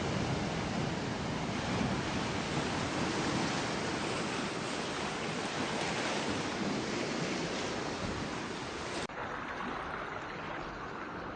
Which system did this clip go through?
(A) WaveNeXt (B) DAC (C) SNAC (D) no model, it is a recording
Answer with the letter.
D